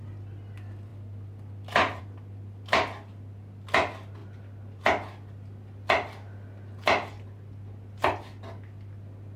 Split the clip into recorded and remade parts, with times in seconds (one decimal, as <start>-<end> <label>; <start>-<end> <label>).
0.0-9.4 recorded